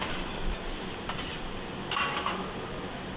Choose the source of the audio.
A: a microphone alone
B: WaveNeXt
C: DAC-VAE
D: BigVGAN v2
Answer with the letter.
A